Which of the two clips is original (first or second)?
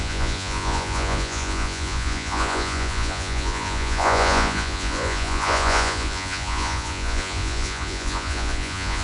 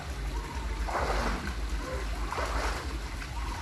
second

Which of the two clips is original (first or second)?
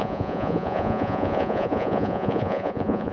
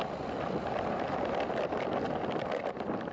second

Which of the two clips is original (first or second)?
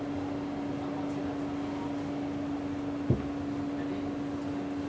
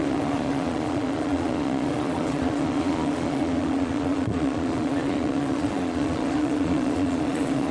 first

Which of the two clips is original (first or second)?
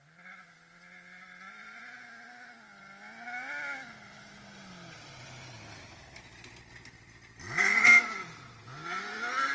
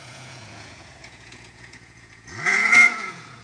first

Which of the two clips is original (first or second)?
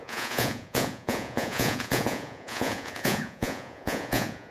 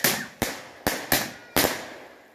second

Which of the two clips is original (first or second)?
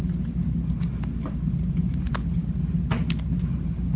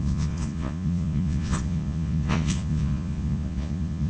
first